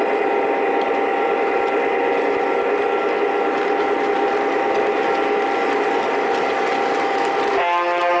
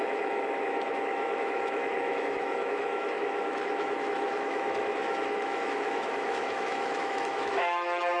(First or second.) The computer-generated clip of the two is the second